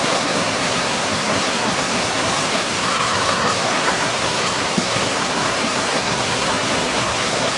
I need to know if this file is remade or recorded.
remade